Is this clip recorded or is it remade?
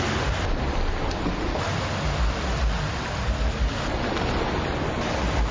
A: recorded